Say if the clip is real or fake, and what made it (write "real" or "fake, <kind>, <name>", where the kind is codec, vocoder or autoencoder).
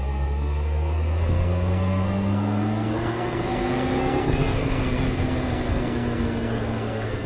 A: fake, codec, SNAC